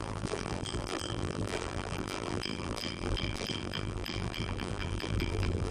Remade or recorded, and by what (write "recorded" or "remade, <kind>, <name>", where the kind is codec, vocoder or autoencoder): remade, vocoder, BigVGAN v2